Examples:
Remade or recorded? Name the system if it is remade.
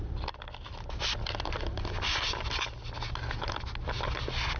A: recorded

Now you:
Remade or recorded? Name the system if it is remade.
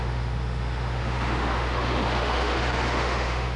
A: remade, autoencoder, DAC-VAE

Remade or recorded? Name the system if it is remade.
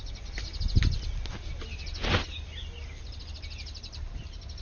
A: recorded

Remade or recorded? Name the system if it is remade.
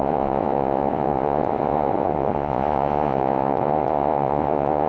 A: remade, vocoder, Vocos